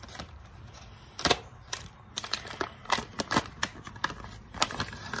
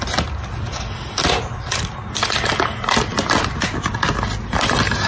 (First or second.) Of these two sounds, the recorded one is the second